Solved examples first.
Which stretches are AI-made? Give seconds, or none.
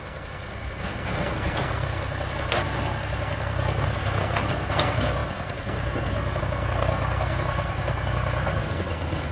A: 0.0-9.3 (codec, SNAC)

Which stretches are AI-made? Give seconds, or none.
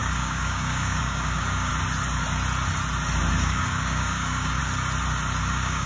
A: 0.0-1.7 (codec, DAC); 3.4-4.6; 5.4-5.9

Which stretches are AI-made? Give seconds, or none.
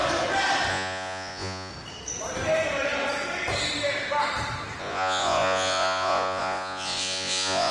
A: 0.7-1.7 (vocoder, Vocos); 4.8-7.7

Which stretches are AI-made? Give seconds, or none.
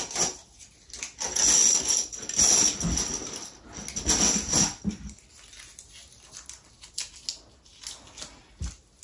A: none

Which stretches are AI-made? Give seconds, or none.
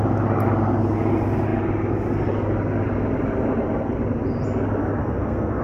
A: 5.0-5.6 (codec, SNAC)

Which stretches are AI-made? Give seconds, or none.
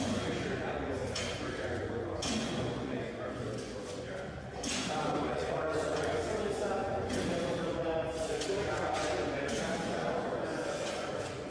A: 0.0-1.0 (vocoder, Vocos); 1.7-11.5